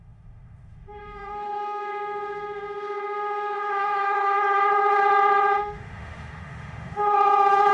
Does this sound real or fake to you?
fake